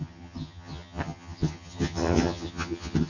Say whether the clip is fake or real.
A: fake